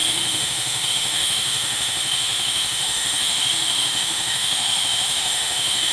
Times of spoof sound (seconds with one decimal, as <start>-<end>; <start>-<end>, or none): 0.0-5.9

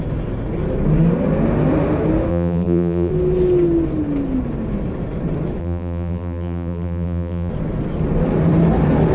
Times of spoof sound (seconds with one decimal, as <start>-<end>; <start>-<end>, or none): 2.3-3.1; 5.6-7.5